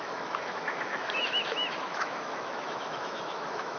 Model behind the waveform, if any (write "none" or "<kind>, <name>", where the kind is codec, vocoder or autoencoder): autoencoder, DAC-VAE